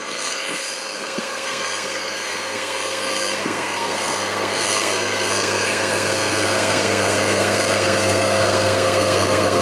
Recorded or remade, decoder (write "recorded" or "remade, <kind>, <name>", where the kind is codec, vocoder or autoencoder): remade, codec, SNAC